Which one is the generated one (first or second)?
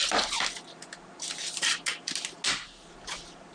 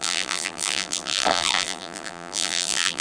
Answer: second